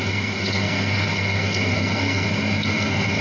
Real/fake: fake